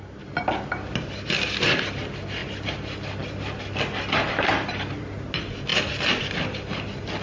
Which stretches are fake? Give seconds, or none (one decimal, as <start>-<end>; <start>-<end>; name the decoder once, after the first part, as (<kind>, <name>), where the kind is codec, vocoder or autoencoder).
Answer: none